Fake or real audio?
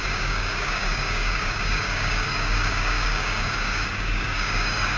fake